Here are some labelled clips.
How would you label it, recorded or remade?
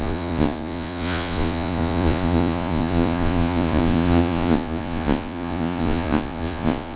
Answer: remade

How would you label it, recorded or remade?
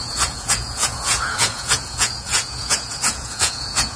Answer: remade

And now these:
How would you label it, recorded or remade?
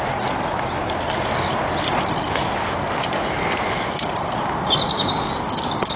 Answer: recorded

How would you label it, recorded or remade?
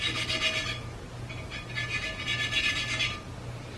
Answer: recorded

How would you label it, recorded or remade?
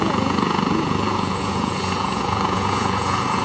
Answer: remade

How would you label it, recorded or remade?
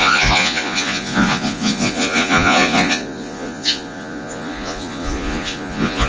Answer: remade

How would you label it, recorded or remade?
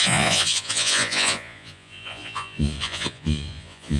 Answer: remade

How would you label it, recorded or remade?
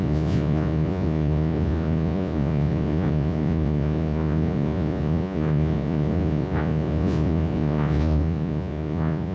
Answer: remade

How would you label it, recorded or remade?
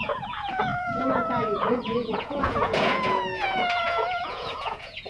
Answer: remade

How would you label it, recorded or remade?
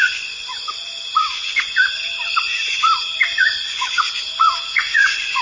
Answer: remade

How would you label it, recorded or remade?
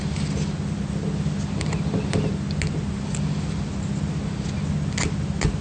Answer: recorded